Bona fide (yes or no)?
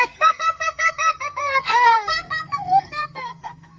no